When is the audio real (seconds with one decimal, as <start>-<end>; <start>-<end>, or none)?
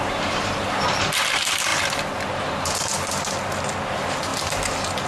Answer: 1.7-2.4; 2.9-3.9; 4.3-5.1